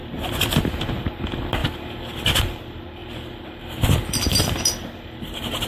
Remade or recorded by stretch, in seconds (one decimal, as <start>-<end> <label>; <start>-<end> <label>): 0.0-1.6 recorded; 1.6-2.6 remade; 2.6-3.0 recorded; 3.0-4.5 remade; 4.5-5.7 recorded